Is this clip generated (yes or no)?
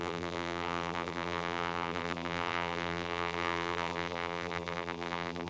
yes